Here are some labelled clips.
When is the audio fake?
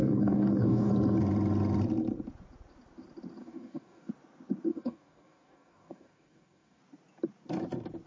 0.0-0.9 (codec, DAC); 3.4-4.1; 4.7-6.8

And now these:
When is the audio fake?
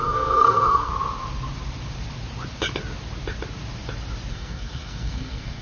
0.0-0.9 (codec, SNAC); 4.3-5.6